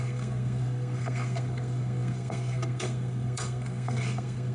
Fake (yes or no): yes